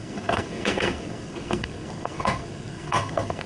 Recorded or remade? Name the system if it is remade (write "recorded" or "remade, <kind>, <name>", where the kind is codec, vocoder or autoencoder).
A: remade, codec, SNAC